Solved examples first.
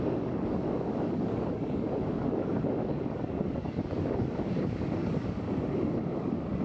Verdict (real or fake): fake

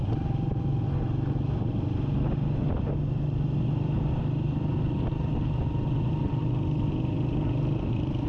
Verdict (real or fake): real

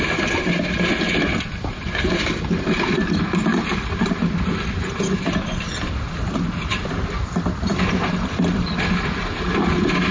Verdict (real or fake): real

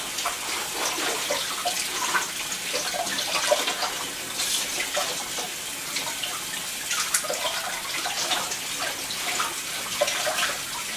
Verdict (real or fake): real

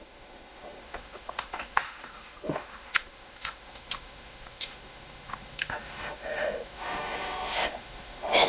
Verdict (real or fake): fake